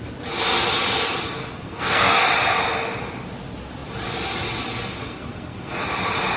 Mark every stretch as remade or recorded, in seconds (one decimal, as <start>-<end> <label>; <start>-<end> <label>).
0.0-1.4 recorded; 1.4-2.2 remade; 2.2-5.0 recorded; 5.0-5.8 remade; 5.8-6.4 recorded